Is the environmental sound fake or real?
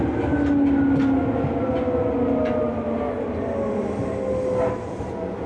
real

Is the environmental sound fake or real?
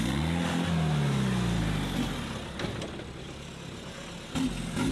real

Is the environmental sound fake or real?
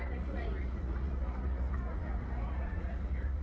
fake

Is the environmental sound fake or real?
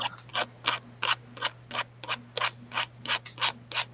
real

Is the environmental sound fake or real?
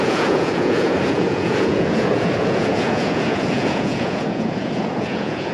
fake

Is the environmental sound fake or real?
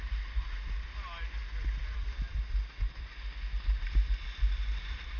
real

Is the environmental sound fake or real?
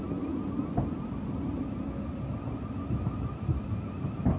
real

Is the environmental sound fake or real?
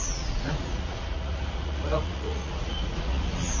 fake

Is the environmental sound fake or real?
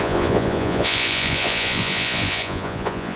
fake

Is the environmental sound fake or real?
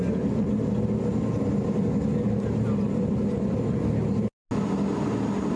real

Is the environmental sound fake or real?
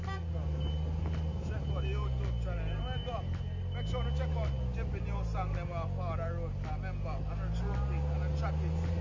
real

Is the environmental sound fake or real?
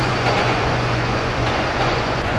fake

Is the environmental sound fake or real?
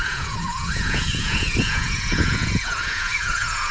fake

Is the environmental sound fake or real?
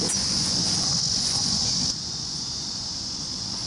fake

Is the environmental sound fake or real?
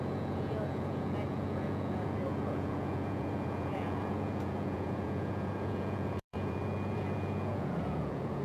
fake